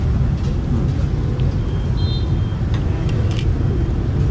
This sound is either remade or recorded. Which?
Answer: recorded